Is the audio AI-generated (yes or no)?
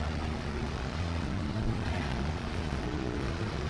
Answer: yes